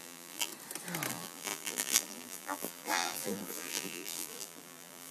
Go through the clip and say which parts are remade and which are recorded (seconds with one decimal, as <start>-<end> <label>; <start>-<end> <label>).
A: 0.0-0.5 remade; 0.5-1.1 recorded; 1.1-5.1 remade